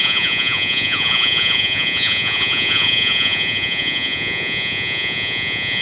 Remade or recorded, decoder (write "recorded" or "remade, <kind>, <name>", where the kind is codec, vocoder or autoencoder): remade, vocoder, Vocos